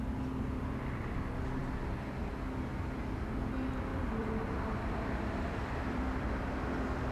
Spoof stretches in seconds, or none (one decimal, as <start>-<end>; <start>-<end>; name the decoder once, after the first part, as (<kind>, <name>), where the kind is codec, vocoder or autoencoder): 3.9-6.3 (vocoder, BigVGAN v2)